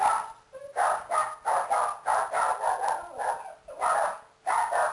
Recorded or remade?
recorded